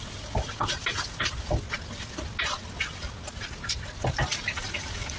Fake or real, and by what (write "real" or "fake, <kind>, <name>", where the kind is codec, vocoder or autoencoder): real